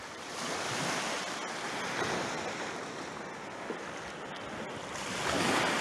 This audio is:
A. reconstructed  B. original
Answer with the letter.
B